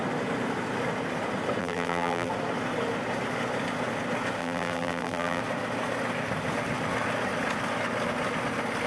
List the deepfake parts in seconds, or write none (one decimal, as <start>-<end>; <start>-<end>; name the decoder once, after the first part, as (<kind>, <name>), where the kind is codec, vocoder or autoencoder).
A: 1.6-2.3 (vocoder, BigVGAN v2); 4.4-5.4